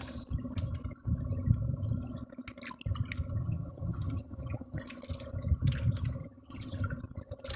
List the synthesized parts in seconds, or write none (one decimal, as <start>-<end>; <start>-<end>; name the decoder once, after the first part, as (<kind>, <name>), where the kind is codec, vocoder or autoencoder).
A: 3.4-4.8 (vocoder, HiFi-GAN); 6.2-6.8